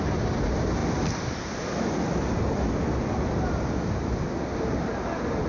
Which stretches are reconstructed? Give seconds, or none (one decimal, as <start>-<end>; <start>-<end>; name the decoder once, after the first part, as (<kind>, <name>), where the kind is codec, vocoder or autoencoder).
none